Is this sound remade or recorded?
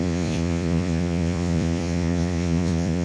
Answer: remade